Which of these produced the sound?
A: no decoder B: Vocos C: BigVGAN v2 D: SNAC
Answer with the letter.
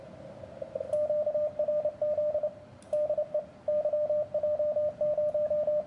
A